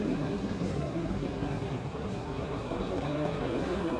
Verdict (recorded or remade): remade